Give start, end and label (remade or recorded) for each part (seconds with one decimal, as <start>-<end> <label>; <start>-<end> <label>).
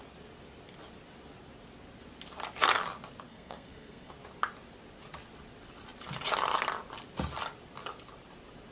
0.0-3.3 recorded; 3.3-4.1 remade; 4.1-8.7 recorded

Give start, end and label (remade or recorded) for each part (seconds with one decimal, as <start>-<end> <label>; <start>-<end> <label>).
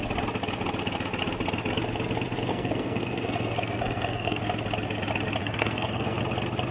0.0-2.5 recorded; 2.5-4.4 remade; 4.4-5.4 recorded; 5.4-6.2 remade; 6.2-6.7 recorded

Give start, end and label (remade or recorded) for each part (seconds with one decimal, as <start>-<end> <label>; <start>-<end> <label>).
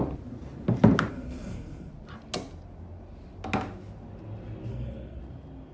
0.0-1.1 recorded; 1.1-1.9 remade; 1.9-4.7 recorded; 4.7-5.2 remade; 5.2-5.7 recorded